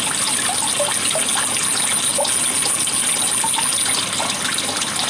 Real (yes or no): yes